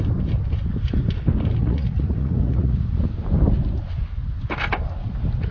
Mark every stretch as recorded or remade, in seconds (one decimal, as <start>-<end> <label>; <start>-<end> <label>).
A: 0.0-1.6 recorded; 1.6-3.0 remade; 3.0-5.5 recorded